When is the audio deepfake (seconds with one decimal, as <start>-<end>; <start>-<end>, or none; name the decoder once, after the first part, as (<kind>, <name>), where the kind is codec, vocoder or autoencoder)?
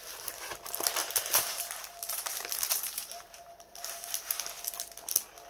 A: 1.0-4.3 (vocoder, BigVGAN v2)